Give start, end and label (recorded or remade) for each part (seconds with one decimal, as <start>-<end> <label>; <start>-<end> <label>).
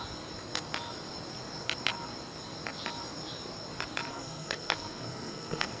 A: 0.0-4.1 recorded; 4.1-5.8 remade